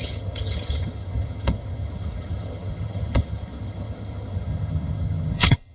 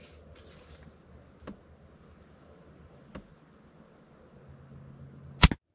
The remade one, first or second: first